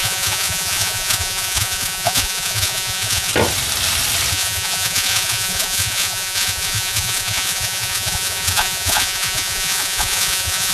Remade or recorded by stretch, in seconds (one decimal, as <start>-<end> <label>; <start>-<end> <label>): 0.0-3.3 remade; 3.3-4.3 recorded; 4.3-10.7 remade